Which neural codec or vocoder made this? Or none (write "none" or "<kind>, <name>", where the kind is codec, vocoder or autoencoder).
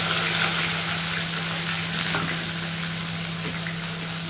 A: none